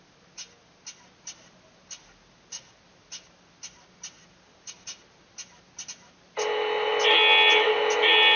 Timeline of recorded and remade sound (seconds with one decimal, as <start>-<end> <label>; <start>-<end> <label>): 0.0-8.4 recorded